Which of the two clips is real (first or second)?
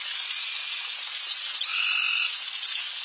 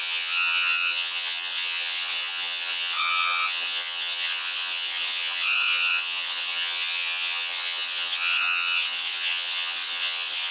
first